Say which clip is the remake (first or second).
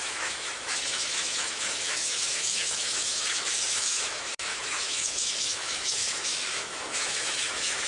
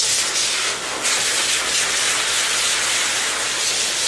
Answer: first